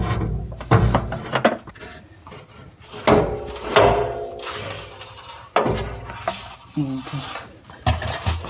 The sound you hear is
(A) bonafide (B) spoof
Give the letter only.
A